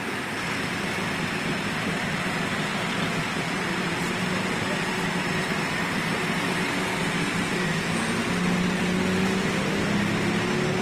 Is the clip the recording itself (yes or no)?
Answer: yes